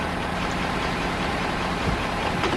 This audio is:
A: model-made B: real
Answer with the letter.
A